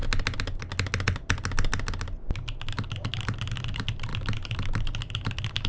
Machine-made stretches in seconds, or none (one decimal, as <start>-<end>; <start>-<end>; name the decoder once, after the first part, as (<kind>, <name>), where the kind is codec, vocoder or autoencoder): none